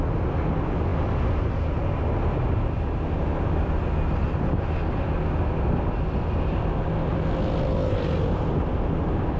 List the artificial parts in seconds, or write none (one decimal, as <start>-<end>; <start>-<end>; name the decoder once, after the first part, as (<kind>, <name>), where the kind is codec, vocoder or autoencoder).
none